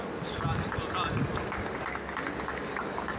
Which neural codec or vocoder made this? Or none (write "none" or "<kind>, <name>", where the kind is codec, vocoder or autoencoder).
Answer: none